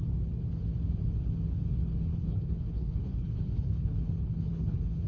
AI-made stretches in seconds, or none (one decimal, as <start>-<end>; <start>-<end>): 2.1-5.1